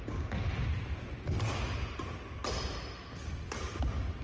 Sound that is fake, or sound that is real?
real